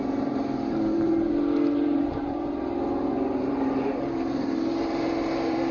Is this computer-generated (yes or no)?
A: yes